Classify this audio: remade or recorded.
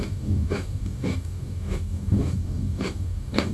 remade